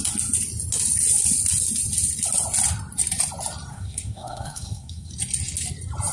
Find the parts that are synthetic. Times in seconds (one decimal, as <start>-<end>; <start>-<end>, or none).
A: 3.7-5.1